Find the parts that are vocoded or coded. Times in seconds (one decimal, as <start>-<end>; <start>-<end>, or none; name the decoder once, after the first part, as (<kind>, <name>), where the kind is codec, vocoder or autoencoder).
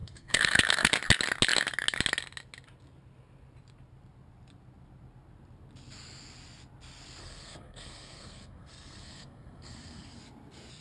0.0-0.9 (codec, SNAC); 7.2-10.2